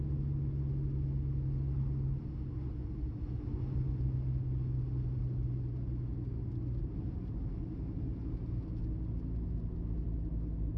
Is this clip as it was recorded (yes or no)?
yes